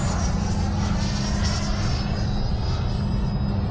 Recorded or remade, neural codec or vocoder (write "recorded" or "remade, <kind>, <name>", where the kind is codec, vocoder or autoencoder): recorded